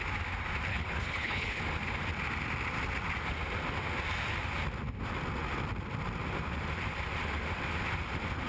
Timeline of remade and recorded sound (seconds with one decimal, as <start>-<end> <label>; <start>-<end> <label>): 0.0-0.7 recorded; 0.7-1.6 remade; 1.6-8.5 recorded